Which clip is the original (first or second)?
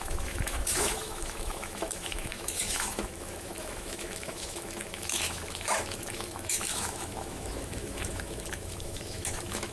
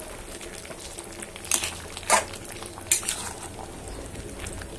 second